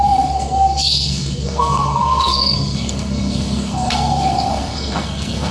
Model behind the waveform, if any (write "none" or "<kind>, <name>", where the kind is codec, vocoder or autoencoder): codec, SNAC